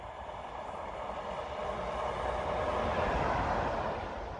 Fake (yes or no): no